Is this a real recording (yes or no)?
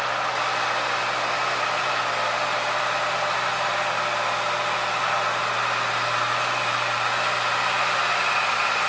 yes